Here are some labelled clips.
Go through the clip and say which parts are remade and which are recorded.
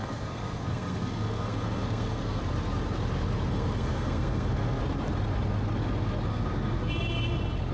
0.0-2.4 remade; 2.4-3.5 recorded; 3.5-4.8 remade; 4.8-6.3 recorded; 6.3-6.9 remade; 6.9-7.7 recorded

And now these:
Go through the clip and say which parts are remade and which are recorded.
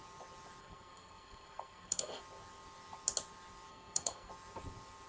0.0-0.6 recorded; 0.6-2.2 remade; 2.2-3.7 recorded; 3.7-4.3 remade; 4.3-5.1 recorded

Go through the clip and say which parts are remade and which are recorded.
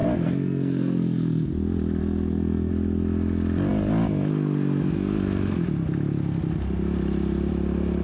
0.0-1.5 remade; 1.5-2.0 recorded; 2.0-2.7 remade; 2.7-8.0 recorded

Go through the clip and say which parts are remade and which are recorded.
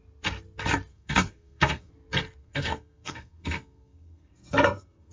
0.0-0.9 recorded; 0.9-1.9 remade; 1.9-2.4 recorded; 2.4-5.1 remade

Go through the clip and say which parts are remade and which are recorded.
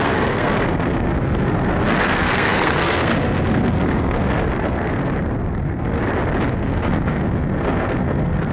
0.0-5.0 remade; 5.0-5.6 recorded; 5.6-6.0 remade; 6.0-6.5 recorded; 6.5-8.5 remade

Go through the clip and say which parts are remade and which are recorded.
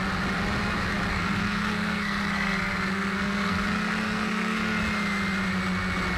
0.0-1.1 recorded; 1.1-4.8 remade; 4.8-6.2 recorded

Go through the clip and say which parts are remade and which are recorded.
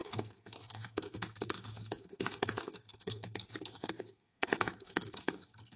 0.0-5.8 remade